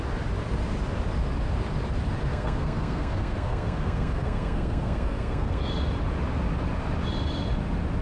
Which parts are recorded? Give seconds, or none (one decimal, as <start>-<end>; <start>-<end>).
0.0-2.3; 5.7-8.0